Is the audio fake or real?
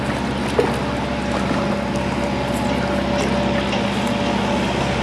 real